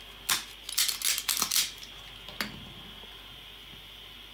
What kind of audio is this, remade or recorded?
recorded